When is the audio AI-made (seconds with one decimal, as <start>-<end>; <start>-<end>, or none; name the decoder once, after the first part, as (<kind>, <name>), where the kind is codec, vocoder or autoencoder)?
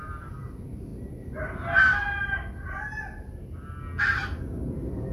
0.0-0.9 (vocoder, BigVGAN v2); 4.0-5.1